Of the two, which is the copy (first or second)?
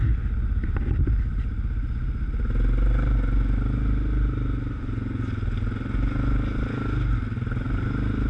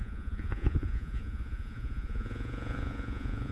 second